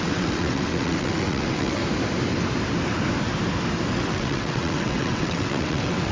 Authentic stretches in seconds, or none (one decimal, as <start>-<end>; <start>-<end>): 1.8-3.9